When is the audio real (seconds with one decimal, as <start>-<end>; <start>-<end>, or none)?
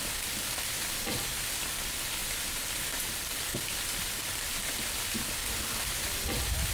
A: 0.0-2.2; 5.8-6.7